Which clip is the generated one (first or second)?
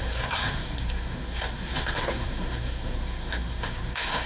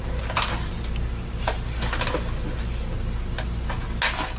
first